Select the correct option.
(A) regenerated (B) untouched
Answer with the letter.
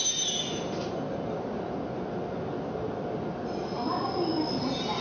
B